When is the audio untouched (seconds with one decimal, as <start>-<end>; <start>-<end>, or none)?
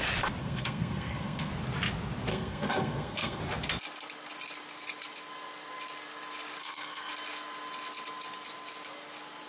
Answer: 0.0-0.4; 1.5-2.3; 3.4-6.6; 7.1-9.5